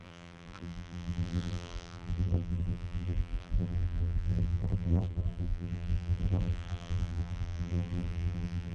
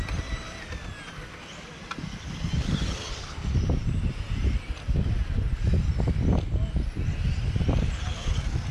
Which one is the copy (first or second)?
first